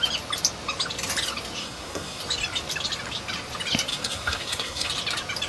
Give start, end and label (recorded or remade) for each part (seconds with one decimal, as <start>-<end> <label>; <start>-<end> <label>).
0.0-1.6 recorded; 1.6-2.2 remade; 2.2-3.9 recorded; 3.9-4.9 remade; 4.9-5.5 recorded